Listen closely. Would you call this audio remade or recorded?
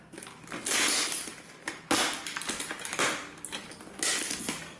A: recorded